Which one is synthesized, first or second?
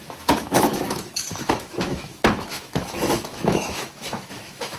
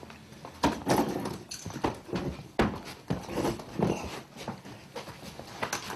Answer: first